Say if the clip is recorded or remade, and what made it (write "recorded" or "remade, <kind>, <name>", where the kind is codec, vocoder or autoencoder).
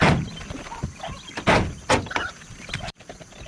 recorded